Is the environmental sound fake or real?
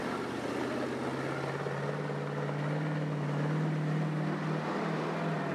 real